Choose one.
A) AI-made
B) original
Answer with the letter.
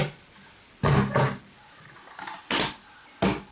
B